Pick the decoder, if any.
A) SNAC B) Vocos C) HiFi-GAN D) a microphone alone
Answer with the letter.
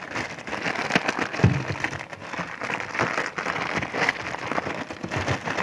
D